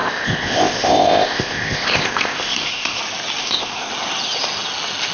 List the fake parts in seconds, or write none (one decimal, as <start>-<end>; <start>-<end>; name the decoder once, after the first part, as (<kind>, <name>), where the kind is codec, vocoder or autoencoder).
0.0-3.0 (codec, ZipCodec); 3.4-3.9